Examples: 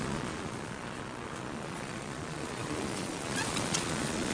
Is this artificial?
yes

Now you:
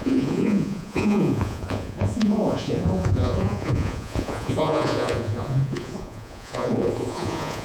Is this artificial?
yes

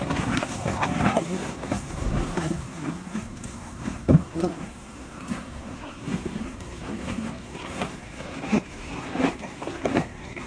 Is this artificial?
yes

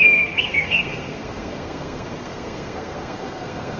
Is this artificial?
yes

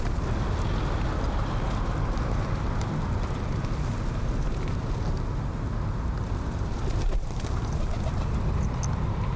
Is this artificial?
no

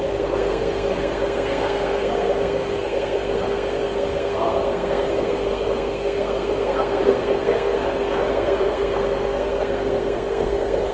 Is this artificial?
yes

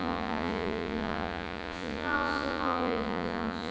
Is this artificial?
yes